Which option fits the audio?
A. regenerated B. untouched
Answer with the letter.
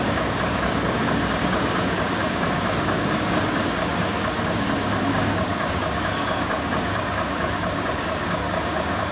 A